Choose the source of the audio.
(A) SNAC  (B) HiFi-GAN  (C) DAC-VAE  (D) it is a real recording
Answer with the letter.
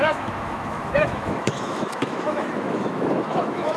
C